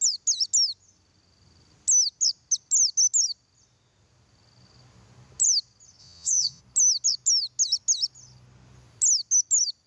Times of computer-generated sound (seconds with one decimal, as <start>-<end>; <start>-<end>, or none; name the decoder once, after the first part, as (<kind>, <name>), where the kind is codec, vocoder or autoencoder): 6.0-6.6 (vocoder, Vocos)